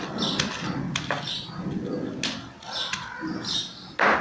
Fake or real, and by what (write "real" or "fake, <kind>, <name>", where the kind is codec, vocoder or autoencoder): real